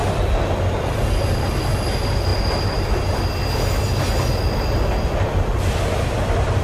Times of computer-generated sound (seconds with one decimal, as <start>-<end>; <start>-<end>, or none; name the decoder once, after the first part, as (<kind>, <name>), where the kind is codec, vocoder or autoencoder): none